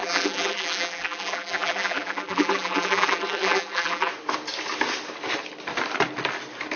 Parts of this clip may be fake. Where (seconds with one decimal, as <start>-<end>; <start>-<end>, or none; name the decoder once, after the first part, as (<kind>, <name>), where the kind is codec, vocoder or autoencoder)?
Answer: 0.0-4.1 (vocoder, BigVGAN v2)